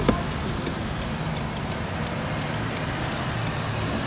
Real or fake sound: real